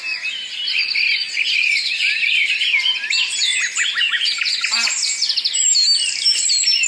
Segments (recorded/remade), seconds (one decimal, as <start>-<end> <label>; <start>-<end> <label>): 0.0-0.8 remade; 0.8-1.4 recorded; 1.4-4.3 remade; 4.3-6.9 recorded